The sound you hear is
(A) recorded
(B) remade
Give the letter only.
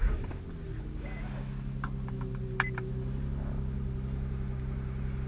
A